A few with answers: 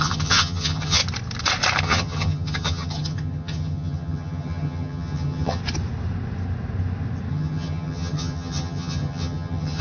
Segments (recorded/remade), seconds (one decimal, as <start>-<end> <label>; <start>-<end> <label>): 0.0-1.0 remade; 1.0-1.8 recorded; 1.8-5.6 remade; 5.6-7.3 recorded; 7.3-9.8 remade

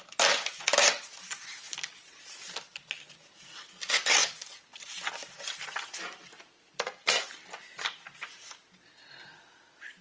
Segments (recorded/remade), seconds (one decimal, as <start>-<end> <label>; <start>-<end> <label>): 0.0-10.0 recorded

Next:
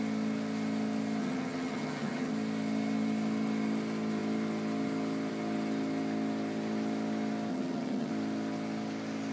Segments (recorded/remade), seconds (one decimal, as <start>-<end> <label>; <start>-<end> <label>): 0.0-1.2 recorded; 1.2-2.3 remade; 2.3-7.5 recorded; 7.5-8.1 remade; 8.1-9.3 recorded

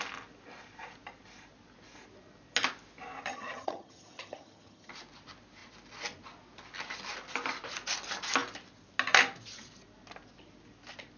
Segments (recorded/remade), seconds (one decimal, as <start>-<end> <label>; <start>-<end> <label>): 0.0-3.3 recorded; 3.3-4.9 remade; 4.9-11.2 recorded

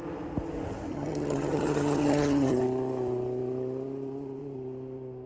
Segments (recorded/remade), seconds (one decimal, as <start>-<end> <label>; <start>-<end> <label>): 0.0-0.9 recorded; 0.9-2.6 remade; 2.6-5.3 recorded